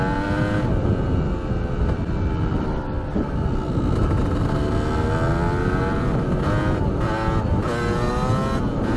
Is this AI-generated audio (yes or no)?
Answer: no